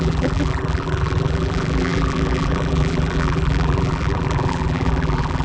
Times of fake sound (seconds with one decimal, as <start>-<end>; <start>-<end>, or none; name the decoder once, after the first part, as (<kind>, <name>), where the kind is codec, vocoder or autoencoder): 0.0-5.4 (vocoder, BigVGAN v2)